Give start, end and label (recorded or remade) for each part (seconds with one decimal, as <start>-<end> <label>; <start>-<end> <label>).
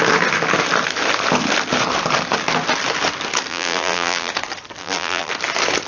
0.0-3.5 recorded; 3.5-4.3 remade; 4.3-4.8 recorded; 4.8-5.3 remade; 5.3-5.9 recorded